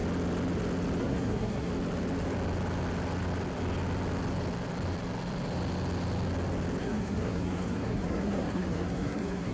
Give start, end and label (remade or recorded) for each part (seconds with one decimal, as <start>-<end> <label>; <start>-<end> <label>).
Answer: 0.0-1.0 recorded; 1.0-1.7 remade; 1.7-6.8 recorded; 6.8-9.5 remade